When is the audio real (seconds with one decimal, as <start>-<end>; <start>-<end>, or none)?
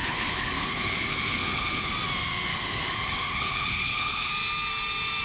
1.9-2.5; 4.3-5.2